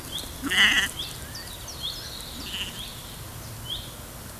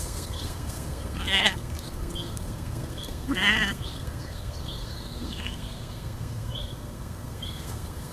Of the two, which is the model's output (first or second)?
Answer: second